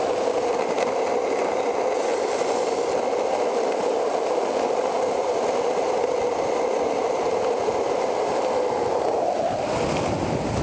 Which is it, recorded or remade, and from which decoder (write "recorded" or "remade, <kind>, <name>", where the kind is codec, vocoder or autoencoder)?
recorded